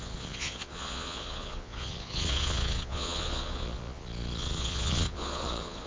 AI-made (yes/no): yes